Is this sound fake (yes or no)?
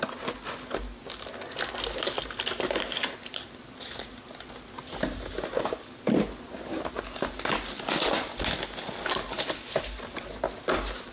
no